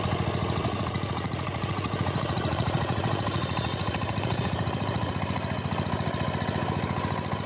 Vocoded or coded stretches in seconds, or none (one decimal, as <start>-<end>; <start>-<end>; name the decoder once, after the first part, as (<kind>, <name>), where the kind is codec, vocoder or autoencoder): 0.6-5.1 (vocoder, Vocos)

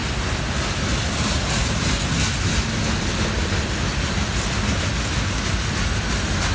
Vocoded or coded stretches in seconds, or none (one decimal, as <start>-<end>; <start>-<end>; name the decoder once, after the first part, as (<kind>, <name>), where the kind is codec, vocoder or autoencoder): none

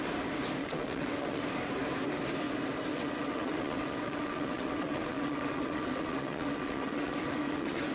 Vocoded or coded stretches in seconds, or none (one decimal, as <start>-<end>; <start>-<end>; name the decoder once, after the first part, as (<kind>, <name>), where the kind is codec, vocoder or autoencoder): 0.6-1.4 (vocoder, WaveNeXt); 2.9-7.9

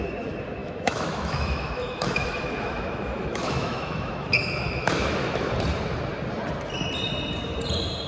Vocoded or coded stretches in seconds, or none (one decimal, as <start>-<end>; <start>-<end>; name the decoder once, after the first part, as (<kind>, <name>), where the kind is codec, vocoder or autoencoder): 0.6-5.5 (autoencoder, DAC-VAE)

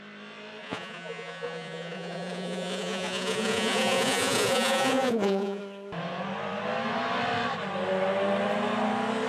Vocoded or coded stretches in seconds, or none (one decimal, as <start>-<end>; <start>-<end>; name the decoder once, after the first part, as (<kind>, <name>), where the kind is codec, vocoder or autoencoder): 0.6-5.6 (vocoder, Vocos)

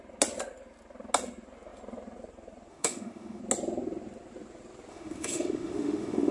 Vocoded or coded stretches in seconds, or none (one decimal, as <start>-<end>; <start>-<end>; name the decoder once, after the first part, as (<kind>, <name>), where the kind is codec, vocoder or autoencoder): 2.7-3.4 (autoencoder, DAC-VAE); 4.9-6.3

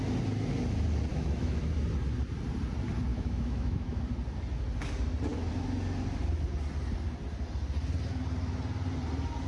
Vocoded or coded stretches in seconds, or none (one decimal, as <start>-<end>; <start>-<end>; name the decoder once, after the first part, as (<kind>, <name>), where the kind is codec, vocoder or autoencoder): 1.1-1.6 (autoencoder, DAC-VAE); 3.1-4.0